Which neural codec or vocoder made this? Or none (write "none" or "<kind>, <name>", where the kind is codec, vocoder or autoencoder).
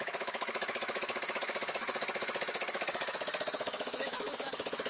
autoencoder, DAC-VAE